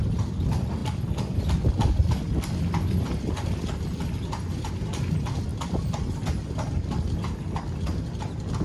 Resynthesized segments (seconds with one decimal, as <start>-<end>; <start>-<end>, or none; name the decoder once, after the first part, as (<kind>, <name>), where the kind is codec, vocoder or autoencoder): none